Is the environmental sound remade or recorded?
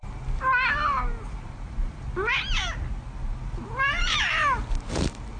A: recorded